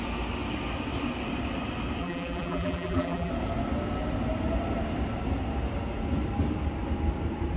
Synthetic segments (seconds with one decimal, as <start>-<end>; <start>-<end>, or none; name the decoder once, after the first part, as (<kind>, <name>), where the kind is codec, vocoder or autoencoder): 2.0-3.3 (vocoder, BigVGAN v2)